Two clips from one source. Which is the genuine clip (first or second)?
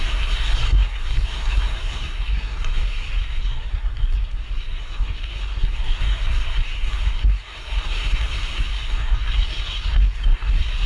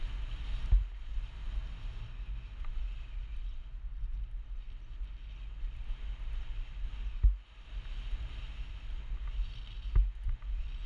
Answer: second